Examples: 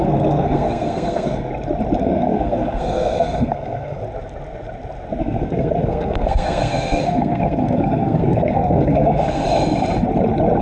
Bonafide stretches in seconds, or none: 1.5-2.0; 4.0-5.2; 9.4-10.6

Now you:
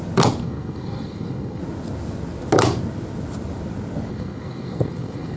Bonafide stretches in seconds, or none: 0.0-0.4; 1.6-4.1

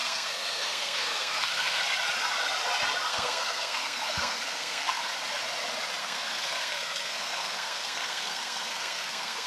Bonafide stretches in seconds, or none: 1.8-3.1; 5.0-6.0

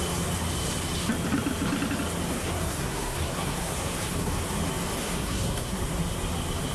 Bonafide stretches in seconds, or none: 0.0-2.3; 4.4-5.0; 5.8-6.7

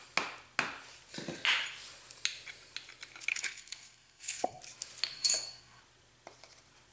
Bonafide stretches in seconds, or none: 0.0-3.3; 4.6-5.1; 5.8-6.9

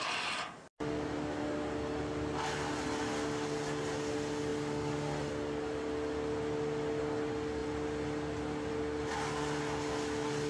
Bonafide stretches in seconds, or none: 0.0-10.5

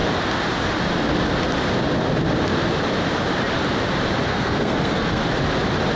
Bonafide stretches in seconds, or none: 0.0-4.3; 5.2-6.0

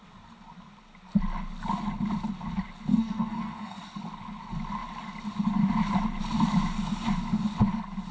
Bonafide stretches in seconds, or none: 0.0-2.9; 4.0-8.1